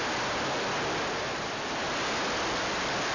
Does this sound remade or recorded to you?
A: recorded